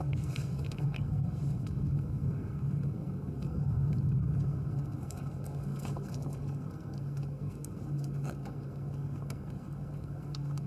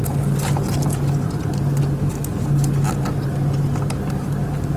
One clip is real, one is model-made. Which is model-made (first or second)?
first